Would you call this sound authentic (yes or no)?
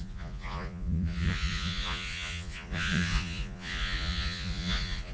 no